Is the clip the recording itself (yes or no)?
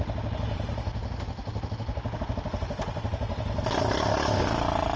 yes